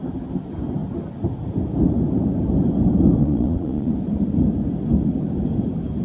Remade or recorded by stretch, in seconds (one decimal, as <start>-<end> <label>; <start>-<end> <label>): 0.0-3.2 recorded; 3.2-3.9 remade; 3.9-6.0 recorded